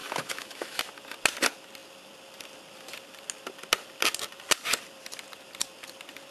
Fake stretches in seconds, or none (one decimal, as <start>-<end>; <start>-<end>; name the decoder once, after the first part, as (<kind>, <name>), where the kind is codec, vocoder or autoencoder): 0.0-0.8 (autoencoder, DAC-VAE)